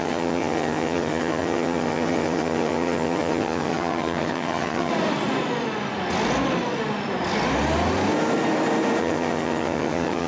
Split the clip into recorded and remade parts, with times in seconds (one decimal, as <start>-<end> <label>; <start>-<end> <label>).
0.0-4.9 remade; 4.9-9.0 recorded; 9.0-10.3 remade